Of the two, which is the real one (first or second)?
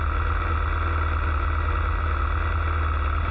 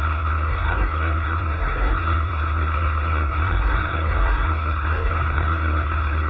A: first